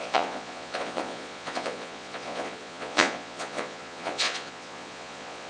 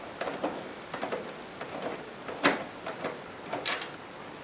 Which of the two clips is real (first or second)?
second